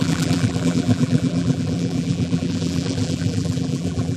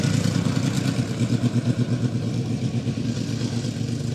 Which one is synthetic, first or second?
first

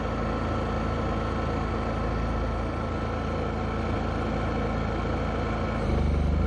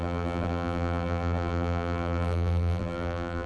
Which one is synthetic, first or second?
second